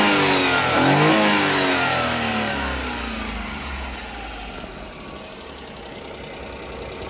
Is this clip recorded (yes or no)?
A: yes